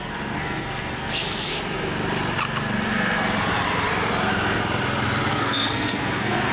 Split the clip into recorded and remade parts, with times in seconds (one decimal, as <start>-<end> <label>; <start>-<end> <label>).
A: 0.0-1.5 remade; 1.5-5.3 recorded; 5.3-6.5 remade

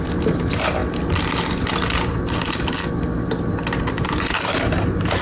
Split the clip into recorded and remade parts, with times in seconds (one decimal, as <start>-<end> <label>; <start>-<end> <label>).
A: 0.0-0.8 remade; 0.8-3.9 recorded; 3.9-5.2 remade

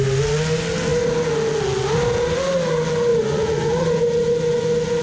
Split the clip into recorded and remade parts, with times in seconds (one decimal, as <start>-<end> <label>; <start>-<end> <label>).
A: 0.0-3.1 recorded; 3.1-4.0 remade; 4.0-5.0 recorded

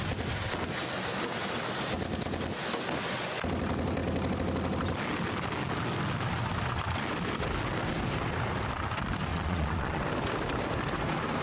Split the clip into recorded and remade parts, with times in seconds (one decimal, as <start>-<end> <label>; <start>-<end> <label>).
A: 0.0-9.3 recorded; 9.3-10.0 remade; 10.0-11.4 recorded